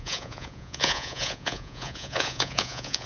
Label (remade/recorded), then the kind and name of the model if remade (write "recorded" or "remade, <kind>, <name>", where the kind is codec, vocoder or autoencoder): remade, vocoder, Vocos